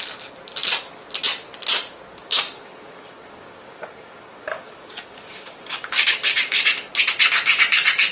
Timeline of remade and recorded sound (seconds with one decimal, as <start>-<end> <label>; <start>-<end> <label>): 0.0-2.2 recorded; 2.2-6.9 remade; 6.9-8.1 recorded